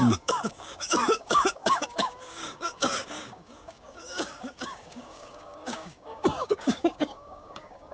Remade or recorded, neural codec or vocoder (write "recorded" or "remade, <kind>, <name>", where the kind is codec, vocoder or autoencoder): remade, codec, DAC